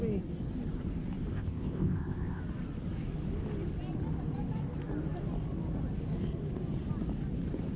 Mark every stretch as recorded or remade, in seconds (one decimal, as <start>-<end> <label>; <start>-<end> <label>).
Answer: 0.0-1.3 recorded; 1.3-2.4 remade; 2.4-7.8 recorded